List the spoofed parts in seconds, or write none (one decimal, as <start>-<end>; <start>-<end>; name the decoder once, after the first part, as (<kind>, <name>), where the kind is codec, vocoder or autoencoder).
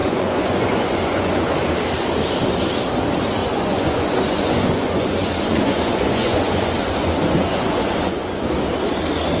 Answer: 0.0-1.5 (vocoder, Vocos); 3.4-8.5